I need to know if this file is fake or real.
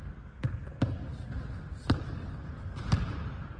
real